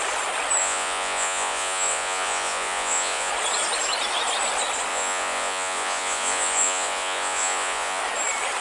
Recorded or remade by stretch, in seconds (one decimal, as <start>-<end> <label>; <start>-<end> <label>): 0.0-0.6 recorded; 0.6-3.3 remade; 3.3-4.9 recorded; 4.9-8.0 remade; 8.0-8.6 recorded